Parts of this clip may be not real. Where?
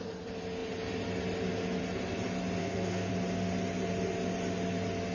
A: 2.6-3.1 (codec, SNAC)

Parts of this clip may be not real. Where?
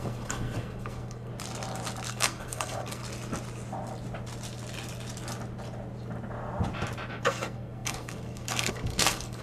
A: 0.0-1.3 (codec, SNAC); 2.1-3.0; 7.1-9.4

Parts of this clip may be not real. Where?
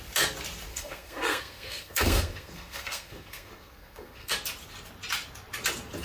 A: 0.7-4.3 (codec, SNAC)